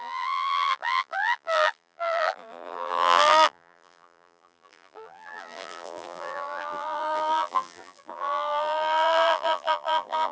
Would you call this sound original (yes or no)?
no